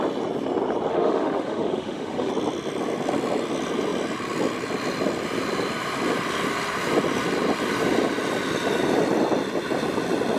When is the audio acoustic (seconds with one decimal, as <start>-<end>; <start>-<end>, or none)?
0.0-0.9; 2.3-10.4